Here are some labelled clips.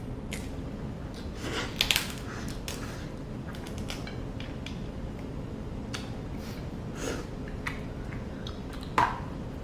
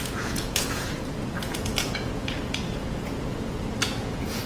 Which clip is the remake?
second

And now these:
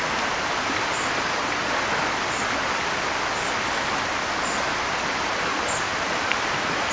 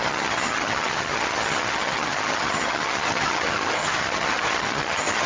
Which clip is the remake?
second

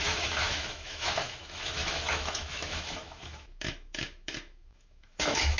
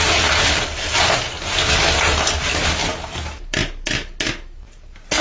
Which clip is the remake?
first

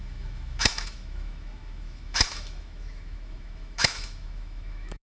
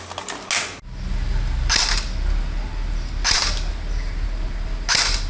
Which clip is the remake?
first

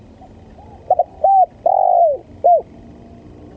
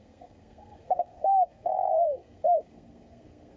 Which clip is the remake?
second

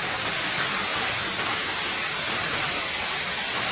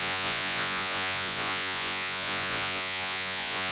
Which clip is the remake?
second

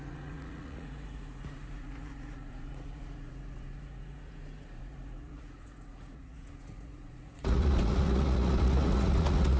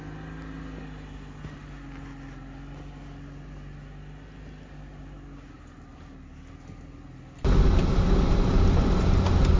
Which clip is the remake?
first